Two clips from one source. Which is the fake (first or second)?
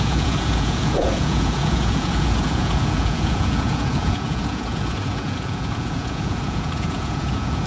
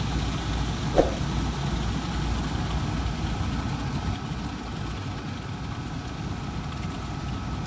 first